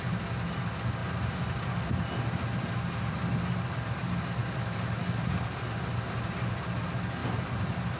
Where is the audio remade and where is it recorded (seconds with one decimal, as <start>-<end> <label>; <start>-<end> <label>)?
0.0-8.0 recorded